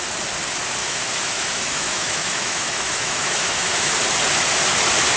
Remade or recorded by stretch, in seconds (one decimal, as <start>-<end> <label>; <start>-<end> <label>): 0.0-0.8 recorded; 0.8-3.9 remade; 3.9-5.2 recorded